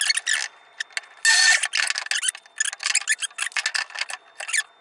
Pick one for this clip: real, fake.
real